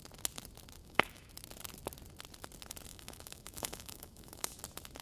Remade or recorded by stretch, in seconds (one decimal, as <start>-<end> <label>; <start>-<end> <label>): 0.0-0.8 recorded; 0.8-1.3 remade; 1.3-2.9 recorded; 2.9-4.6 remade; 4.6-5.0 recorded